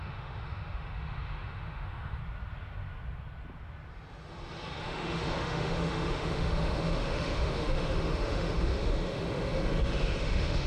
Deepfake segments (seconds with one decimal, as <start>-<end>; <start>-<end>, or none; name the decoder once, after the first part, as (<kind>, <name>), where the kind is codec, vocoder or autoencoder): 0.0-2.2 (autoencoder, DAC-VAE); 4.8-10.7